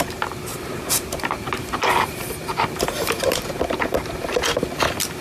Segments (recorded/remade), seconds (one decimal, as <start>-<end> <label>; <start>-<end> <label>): 0.0-0.5 recorded; 0.5-3.6 remade; 3.6-5.2 recorded